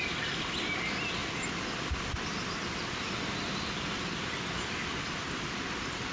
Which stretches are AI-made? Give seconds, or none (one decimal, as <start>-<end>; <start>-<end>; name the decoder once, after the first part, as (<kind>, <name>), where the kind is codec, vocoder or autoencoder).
none